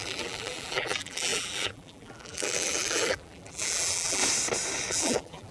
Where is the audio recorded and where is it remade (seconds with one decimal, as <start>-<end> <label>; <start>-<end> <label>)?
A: 0.0-4.2 remade; 4.2-4.9 recorded; 4.9-5.5 remade